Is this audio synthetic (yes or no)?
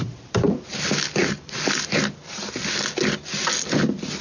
no